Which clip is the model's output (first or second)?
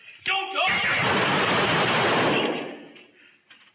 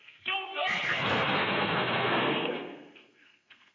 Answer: second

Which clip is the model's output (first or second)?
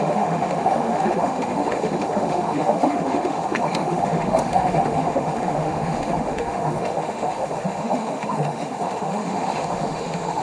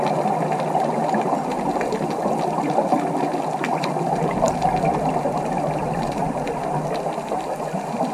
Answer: first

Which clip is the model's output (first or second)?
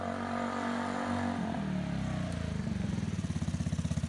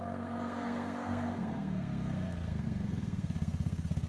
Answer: second